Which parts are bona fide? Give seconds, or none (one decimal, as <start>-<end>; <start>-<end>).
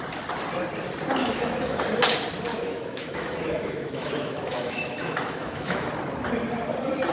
0.0-1.2; 1.8-2.5; 5.9-7.1